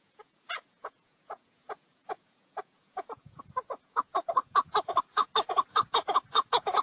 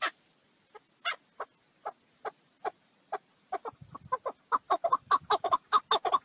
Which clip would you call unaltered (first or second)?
second